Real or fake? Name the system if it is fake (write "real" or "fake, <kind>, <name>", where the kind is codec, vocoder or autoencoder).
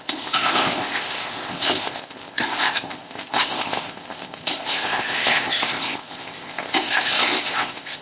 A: fake, codec, ZipCodec